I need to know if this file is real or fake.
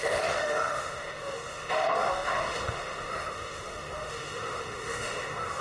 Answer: fake